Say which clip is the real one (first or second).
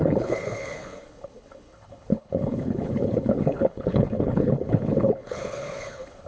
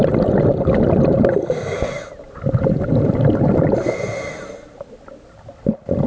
second